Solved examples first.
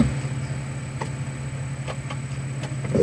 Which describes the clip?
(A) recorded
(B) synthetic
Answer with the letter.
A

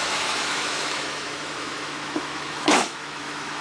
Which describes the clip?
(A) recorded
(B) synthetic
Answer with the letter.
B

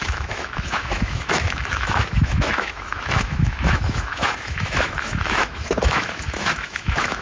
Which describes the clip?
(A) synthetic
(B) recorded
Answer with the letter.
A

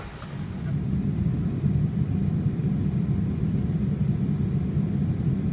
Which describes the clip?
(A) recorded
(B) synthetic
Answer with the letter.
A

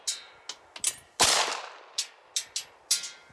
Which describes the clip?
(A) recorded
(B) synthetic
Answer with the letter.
A